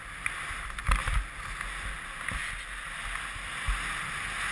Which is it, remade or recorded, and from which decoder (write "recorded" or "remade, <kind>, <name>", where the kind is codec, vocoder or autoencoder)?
recorded